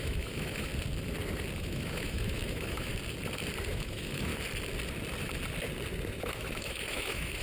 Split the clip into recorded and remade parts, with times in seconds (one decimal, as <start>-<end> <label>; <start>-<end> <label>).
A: 0.0-0.7 remade; 0.7-1.6 recorded; 1.6-2.9 remade; 2.9-3.7 recorded; 3.7-4.3 remade; 4.3-6.2 recorded; 6.2-7.4 remade